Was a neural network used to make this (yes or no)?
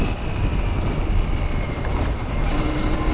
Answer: no